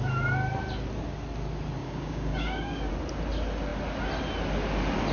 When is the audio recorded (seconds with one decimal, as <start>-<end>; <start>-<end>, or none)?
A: 0.0-1.8; 2.9-5.1